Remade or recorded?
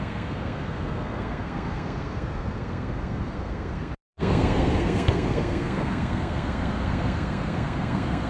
remade